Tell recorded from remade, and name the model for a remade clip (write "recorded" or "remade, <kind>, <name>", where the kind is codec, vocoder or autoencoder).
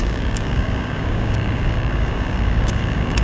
remade, codec, DAC